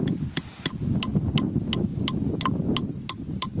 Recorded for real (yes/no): yes